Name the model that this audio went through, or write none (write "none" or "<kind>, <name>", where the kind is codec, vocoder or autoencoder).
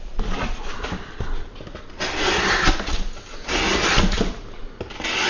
none